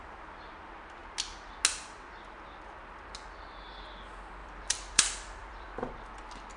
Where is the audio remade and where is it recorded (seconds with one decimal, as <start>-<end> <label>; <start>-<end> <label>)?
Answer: 0.0-4.4 recorded; 4.4-5.9 remade; 5.9-6.6 recorded